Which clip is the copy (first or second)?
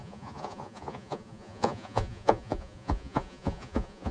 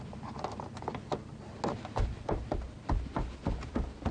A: first